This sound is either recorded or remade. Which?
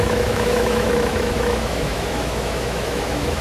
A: remade